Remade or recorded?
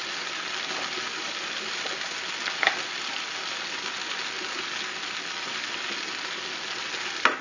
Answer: recorded